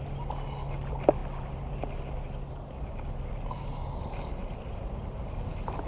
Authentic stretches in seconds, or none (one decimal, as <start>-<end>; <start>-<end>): 0.0-5.9